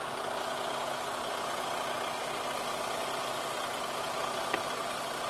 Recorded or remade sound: recorded